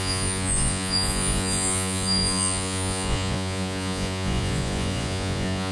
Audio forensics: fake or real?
fake